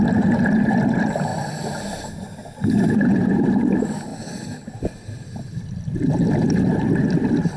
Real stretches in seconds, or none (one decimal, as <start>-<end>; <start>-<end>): 0.0-7.6